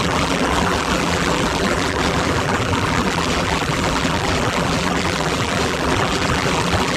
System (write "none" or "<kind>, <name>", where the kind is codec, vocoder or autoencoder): vocoder, BigVGAN v2